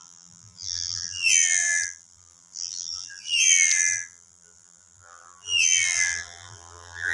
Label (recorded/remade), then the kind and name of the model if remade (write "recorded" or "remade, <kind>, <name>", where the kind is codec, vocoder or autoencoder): remade, vocoder, BigVGAN v2